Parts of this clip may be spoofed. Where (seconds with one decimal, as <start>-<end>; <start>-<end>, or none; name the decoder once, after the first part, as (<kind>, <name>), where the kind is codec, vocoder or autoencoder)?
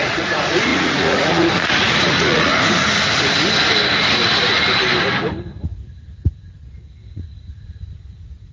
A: 0.0-2.5 (vocoder, Vocos); 7.1-8.5